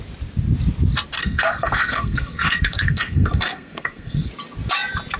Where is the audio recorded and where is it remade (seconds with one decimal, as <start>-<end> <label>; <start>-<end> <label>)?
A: 0.0-1.2 recorded; 1.2-4.3 remade; 4.3-5.2 recorded